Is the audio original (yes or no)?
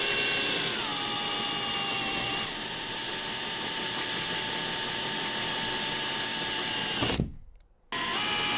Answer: yes